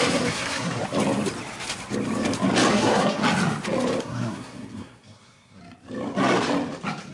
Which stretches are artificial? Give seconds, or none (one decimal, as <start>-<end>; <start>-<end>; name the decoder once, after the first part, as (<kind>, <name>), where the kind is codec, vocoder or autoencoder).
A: 0.0-0.8 (codec, SNAC); 2.7-3.2; 4.0-5.6